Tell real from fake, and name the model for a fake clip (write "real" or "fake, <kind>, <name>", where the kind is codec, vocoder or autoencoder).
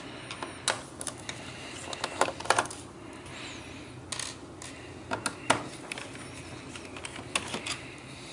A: real